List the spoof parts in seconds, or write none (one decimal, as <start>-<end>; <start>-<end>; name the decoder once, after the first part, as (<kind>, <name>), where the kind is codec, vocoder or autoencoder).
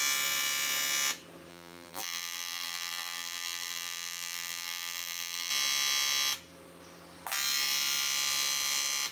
1.5-5.5 (vocoder, BigVGAN v2)